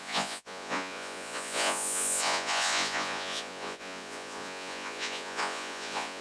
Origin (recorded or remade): remade